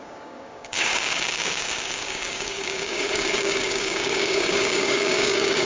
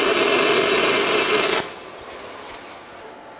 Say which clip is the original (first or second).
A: second